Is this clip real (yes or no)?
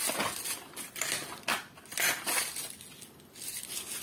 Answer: yes